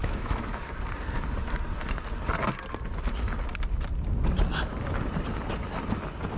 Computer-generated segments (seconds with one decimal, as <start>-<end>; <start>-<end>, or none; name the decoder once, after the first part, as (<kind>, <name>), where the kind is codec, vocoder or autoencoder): 0.0-0.7 (autoencoder, DAC-VAE)